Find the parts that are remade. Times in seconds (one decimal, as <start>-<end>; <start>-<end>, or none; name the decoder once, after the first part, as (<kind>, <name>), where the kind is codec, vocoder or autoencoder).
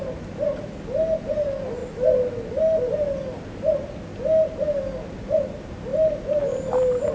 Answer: none